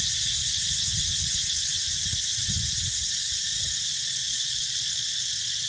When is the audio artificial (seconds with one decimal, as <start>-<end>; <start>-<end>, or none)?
3.9-5.3